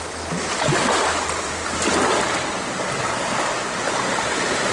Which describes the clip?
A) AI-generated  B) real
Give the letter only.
B